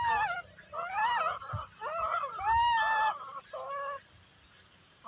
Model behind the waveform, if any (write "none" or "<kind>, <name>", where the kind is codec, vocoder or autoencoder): none